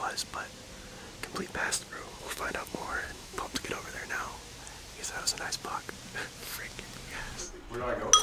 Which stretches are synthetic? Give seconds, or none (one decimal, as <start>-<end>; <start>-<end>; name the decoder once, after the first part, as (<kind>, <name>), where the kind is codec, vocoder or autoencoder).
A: 2.1-3.4 (autoencoder, DAC-VAE)